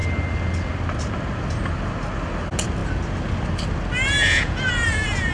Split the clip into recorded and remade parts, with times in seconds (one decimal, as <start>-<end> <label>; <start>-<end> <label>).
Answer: 0.0-4.2 recorded; 4.2-5.3 remade